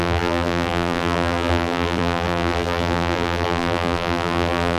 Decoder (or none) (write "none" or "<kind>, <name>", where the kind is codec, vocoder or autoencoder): vocoder, BigVGAN v2